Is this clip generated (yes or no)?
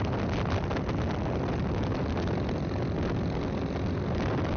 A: no